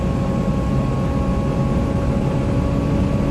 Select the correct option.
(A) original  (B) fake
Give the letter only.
A